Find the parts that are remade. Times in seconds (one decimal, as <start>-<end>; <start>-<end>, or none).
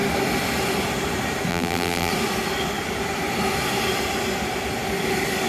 1.5-2.1